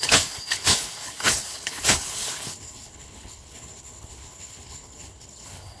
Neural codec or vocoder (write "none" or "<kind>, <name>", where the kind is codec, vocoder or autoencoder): codec, HILCodec